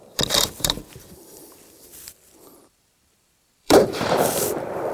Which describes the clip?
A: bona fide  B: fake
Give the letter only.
B